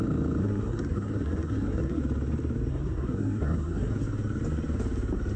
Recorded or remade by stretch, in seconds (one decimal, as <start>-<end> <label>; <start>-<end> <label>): 0.0-0.4 recorded; 0.4-2.0 remade; 2.0-2.7 recorded; 2.7-3.9 remade; 3.9-5.4 recorded